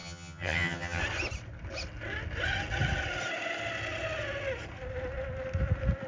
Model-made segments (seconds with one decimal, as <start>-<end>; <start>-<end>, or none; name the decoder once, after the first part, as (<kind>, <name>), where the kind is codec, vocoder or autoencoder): 0.0-1.0 (vocoder, HiFi-GAN)